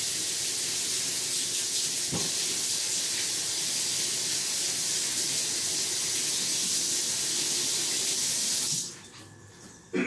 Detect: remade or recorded recorded